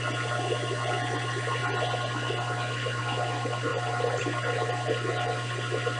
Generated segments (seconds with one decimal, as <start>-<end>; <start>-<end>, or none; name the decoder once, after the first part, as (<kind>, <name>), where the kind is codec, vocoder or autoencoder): none